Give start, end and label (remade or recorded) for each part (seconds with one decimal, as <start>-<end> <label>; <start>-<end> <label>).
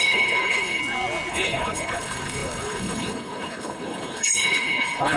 0.0-0.8 remade; 0.8-1.3 recorded; 1.3-5.2 remade